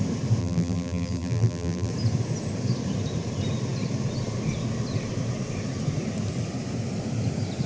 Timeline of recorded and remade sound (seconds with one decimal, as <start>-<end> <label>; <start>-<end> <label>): 0.0-0.4 recorded; 0.4-1.9 remade; 1.9-7.7 recorded